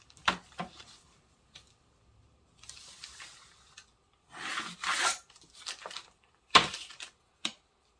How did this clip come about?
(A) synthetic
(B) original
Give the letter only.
A